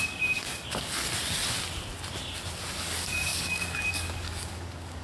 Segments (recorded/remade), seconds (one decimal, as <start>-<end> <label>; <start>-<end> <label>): 0.0-1.1 remade; 1.1-2.8 recorded; 2.8-5.0 remade